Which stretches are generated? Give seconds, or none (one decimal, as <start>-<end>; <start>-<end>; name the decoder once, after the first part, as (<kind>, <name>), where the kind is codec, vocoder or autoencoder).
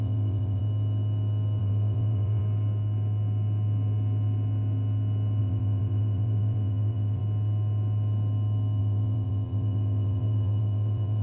0.0-0.6 (vocoder, WaveNeXt); 1.6-2.4; 5.4-7.2; 8.8-11.2